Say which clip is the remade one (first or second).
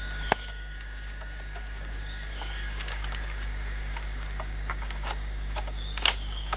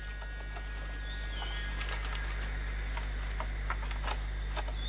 first